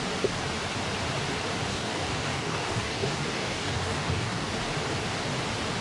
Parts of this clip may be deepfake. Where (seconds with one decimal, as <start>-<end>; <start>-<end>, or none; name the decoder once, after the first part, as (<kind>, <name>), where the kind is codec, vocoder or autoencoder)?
1.7-4.5 (codec, DAC)